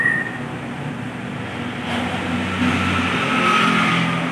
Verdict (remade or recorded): recorded